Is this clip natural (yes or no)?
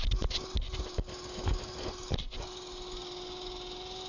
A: yes